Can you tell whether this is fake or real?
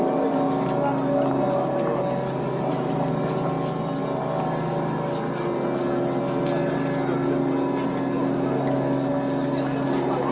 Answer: real